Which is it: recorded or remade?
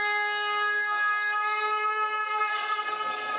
remade